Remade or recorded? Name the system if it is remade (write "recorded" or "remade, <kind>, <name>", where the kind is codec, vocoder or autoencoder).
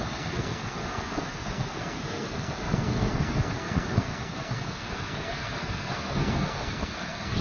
remade, codec, SNAC